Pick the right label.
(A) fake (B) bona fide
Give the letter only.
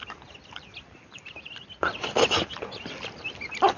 B